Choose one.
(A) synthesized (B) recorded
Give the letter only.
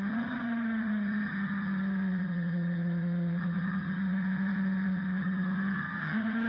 A